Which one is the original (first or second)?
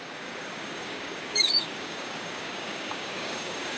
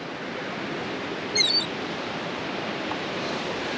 second